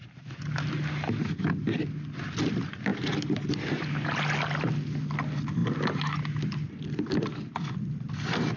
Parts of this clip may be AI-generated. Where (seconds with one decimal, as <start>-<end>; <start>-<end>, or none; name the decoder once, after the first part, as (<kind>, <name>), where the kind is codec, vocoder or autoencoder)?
none